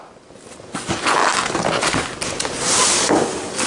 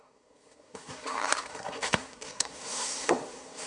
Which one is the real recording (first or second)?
first